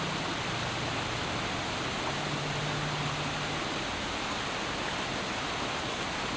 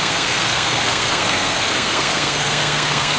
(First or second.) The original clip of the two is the first